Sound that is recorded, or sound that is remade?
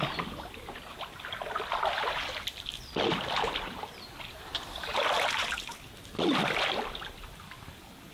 recorded